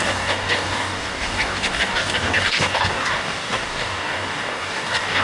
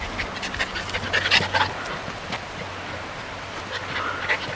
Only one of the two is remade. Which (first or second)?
first